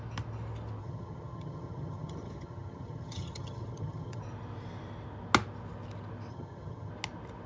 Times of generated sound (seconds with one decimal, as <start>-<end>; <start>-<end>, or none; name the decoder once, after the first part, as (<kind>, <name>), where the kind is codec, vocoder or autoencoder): 0.8-4.2 (vocoder, HiFi-GAN); 6.3-6.9